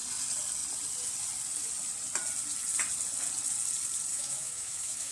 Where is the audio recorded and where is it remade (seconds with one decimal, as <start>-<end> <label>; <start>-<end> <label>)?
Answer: 0.0-4.1 recorded; 4.1-5.1 remade

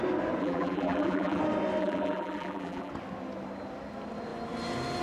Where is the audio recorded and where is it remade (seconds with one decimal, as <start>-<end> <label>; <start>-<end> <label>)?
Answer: 0.0-0.4 recorded; 0.4-1.4 remade; 1.4-1.8 recorded; 1.8-2.9 remade; 2.9-5.0 recorded

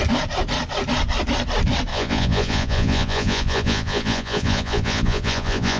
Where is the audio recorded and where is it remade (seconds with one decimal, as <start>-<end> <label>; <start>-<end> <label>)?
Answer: 0.0-1.9 recorded; 1.9-5.8 remade